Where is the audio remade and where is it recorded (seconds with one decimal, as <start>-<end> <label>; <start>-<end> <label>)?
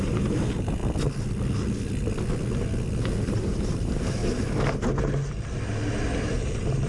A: 0.0-0.8 remade; 0.8-3.3 recorded; 3.3-4.2 remade; 4.2-5.9 recorded; 5.9-6.9 remade